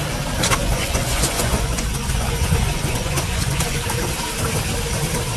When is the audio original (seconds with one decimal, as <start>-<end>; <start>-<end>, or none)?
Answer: 0.0-0.6; 3.8-5.4